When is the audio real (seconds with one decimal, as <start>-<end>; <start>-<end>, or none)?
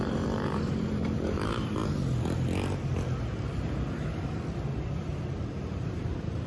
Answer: 1.8-5.7